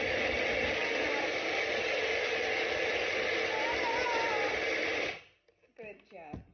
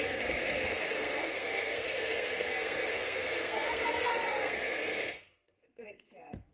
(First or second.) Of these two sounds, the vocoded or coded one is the second